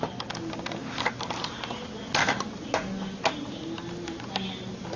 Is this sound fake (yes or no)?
no